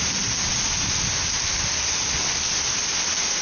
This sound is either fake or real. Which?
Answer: real